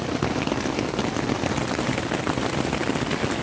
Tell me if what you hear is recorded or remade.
recorded